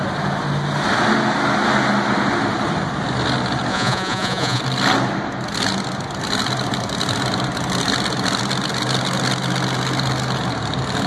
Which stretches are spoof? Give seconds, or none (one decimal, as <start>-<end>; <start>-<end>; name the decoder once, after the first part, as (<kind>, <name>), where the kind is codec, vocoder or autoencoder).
3.7-4.6 (vocoder, Vocos)